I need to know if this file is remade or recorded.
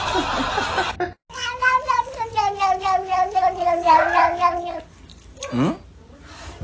recorded